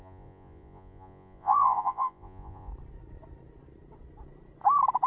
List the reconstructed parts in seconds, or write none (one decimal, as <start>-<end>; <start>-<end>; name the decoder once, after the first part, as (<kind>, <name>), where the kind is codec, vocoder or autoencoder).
0.0-2.7 (vocoder, Vocos)